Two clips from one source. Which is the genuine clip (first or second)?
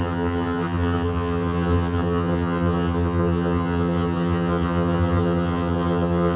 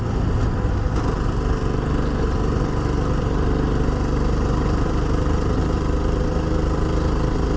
second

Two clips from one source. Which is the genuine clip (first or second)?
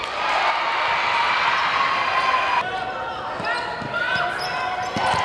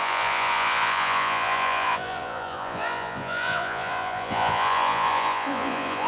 first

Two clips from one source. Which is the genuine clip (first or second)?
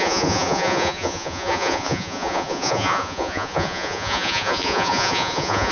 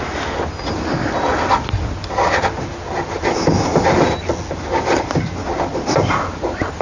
second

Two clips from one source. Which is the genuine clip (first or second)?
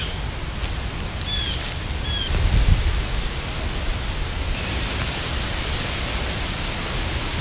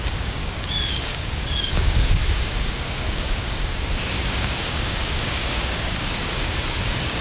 first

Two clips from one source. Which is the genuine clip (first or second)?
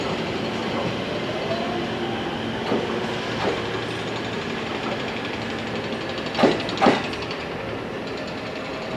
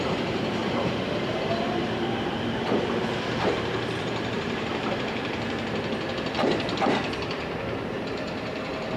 first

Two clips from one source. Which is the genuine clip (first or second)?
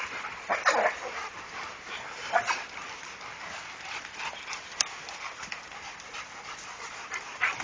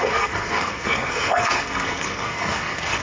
first